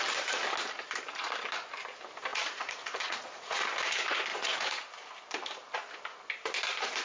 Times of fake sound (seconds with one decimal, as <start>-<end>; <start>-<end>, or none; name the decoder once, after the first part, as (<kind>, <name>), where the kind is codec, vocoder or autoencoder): 2.3-3.6 (vocoder, Vocos); 4.3-5.0